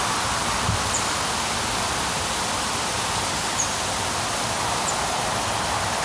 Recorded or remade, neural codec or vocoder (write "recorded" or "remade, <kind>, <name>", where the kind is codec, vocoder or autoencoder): recorded